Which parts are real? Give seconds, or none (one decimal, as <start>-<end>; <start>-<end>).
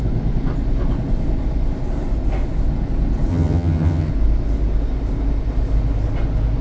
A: 0.0-3.3; 4.1-6.6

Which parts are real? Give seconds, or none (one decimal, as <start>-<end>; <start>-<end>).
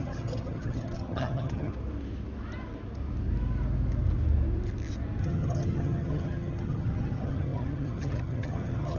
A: 1.7-5.2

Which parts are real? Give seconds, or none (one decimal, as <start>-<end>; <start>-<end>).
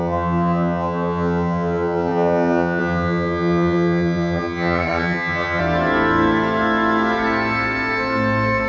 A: 5.6-8.7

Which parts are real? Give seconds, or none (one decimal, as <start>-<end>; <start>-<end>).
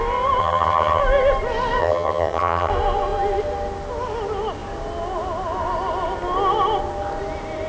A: 0.0-0.4; 1.0-1.8; 2.7-7.7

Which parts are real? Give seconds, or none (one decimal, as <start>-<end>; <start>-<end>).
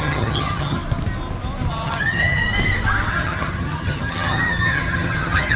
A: 0.8-1.7; 2.4-3.1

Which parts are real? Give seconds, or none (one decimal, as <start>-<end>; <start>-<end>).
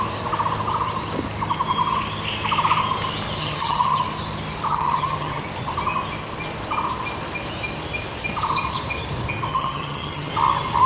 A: 0.0-3.4; 4.0-4.7; 5.4-9.5; 10.3-10.9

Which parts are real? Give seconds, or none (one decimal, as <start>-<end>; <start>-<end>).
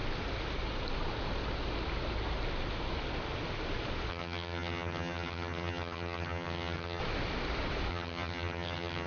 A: 0.0-4.1; 7.0-7.9